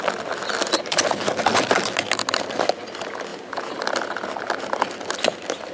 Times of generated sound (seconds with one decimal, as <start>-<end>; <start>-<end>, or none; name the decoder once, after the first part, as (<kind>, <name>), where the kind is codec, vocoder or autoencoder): none